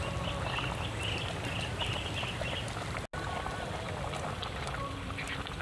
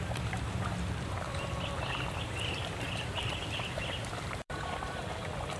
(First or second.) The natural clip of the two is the first